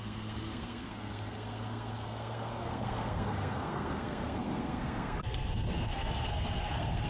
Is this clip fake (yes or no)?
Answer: yes